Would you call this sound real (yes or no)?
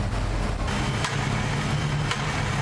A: yes